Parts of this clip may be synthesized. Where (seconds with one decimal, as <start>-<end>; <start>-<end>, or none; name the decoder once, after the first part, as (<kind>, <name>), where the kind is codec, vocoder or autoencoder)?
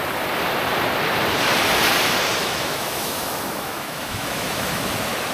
2.4-4.8 (autoencoder, DAC-VAE)